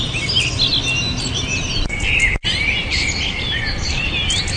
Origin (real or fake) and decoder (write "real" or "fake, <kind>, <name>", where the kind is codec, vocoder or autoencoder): real